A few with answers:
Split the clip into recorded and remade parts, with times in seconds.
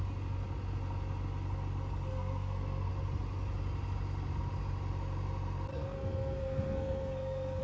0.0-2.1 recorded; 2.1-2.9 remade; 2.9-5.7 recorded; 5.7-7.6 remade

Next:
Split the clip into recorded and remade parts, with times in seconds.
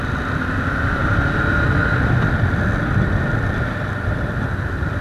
0.0-5.0 recorded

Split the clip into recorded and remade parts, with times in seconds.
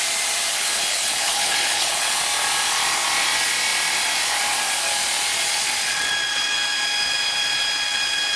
0.0-0.5 recorded; 0.5-2.2 remade; 2.2-8.4 recorded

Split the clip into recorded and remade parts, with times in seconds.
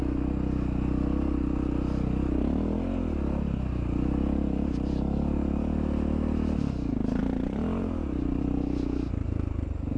0.0-10.0 recorded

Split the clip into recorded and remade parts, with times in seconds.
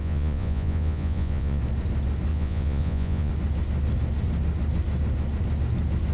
0.0-1.6 remade; 1.6-2.3 recorded; 2.3-3.3 remade; 3.3-6.1 recorded